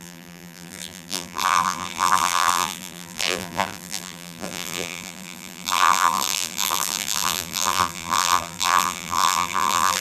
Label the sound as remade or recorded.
remade